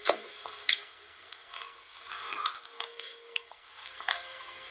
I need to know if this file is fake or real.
fake